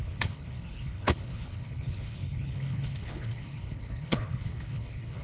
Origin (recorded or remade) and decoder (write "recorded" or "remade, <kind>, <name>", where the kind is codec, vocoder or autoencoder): remade, codec, HILCodec